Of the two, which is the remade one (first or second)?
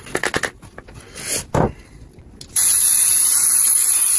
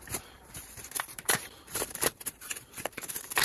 second